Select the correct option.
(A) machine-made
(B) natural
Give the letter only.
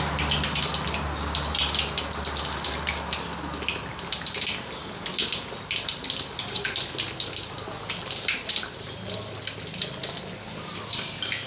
B